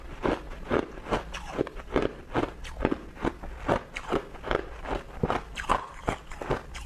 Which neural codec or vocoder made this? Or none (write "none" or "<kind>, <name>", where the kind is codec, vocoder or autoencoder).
none